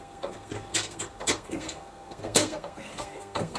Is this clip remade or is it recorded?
remade